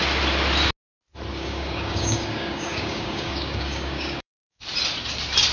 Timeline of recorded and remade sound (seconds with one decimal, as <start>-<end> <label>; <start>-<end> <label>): 0.0-1.3 recorded; 1.3-4.6 remade; 4.6-5.5 recorded